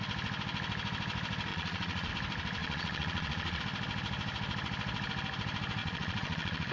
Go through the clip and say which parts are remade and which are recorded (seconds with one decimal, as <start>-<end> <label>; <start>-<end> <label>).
0.0-1.5 recorded; 1.5-2.1 remade; 2.1-2.6 recorded; 2.6-3.6 remade; 3.6-5.8 recorded; 5.8-6.7 remade